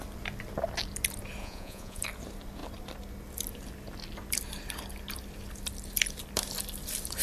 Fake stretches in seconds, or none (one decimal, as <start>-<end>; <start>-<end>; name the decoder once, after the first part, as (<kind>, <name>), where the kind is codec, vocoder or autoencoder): 1.4-2.0 (vocoder, Vocos)